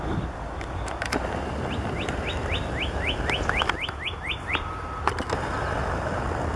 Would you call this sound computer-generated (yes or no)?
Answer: no